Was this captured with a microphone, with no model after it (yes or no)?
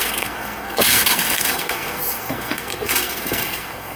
no